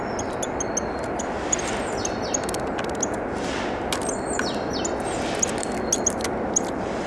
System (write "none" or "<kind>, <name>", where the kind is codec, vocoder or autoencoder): none